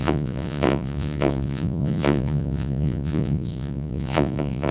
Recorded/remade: remade